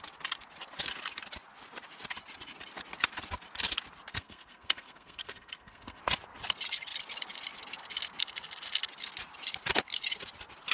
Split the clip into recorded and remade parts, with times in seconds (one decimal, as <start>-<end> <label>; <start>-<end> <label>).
0.0-4.1 recorded; 4.1-6.0 remade; 6.0-10.7 recorded